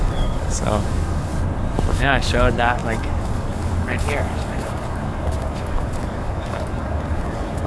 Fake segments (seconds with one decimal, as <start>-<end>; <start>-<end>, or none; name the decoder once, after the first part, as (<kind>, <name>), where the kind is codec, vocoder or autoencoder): 0.0-1.3 (codec, DAC); 1.9-7.7